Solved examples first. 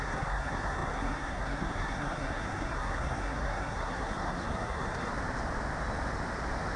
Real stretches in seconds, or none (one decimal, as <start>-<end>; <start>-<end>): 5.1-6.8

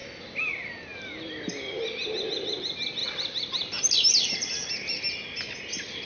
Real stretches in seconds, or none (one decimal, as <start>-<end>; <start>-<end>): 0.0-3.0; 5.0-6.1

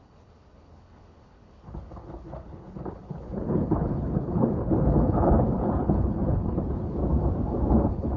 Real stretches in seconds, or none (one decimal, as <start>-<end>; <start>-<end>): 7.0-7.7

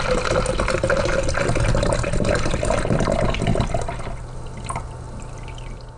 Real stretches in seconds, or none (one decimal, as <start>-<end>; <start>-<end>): 0.0-6.0

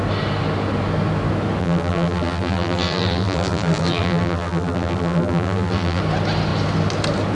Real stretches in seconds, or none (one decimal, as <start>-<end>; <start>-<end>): 0.0-1.6; 6.0-7.3

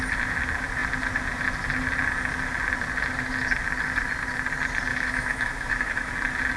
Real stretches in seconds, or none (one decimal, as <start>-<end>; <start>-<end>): 0.0-4.9; 6.1-6.6

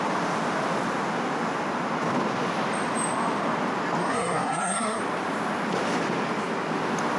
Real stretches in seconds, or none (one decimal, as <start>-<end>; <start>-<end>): 0.0-4.0; 5.0-7.2

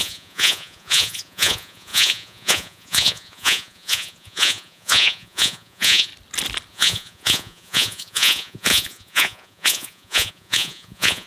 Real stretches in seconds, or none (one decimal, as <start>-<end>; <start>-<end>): 6.1-6.7